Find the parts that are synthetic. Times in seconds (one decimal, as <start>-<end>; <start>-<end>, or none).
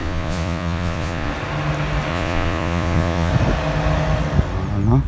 0.0-1.3; 2.1-3.3